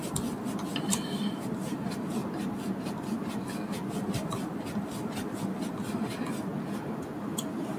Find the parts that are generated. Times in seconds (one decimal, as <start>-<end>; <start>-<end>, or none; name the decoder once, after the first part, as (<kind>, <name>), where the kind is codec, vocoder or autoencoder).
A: 0.0-2.2 (vocoder, BigVGAN v2); 3.9-6.5